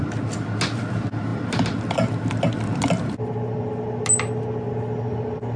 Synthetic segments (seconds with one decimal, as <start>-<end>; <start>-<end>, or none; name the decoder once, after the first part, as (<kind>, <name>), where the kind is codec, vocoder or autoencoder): none

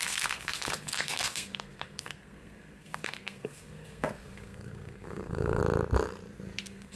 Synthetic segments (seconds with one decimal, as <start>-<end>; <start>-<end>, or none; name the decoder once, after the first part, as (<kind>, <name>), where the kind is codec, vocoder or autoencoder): 0.0-5.6 (codec, SNAC); 6.6-7.0

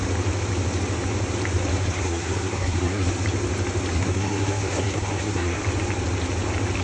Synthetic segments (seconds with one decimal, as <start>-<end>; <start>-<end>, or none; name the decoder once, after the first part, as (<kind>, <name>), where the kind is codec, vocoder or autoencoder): 1.7-3.1 (codec, SNAC); 3.9-5.6

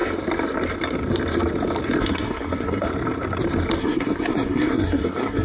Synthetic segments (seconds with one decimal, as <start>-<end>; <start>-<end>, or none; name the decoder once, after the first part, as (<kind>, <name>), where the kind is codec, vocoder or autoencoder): 2.0-2.9 (codec, SNAC); 3.8-5.4

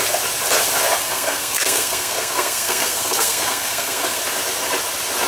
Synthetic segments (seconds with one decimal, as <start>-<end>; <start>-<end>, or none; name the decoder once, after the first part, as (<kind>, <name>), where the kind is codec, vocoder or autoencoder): 1.0-4.2 (codec, SNAC)